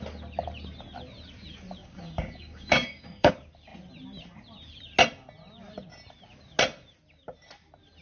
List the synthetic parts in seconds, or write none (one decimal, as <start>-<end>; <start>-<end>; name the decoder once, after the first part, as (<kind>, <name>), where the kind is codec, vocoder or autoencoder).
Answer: 1.8-3.3 (codec, DAC)